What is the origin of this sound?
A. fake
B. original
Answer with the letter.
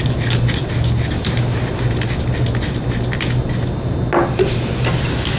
B